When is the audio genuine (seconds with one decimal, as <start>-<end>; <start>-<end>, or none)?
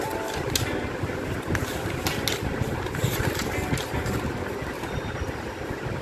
0.0-6.0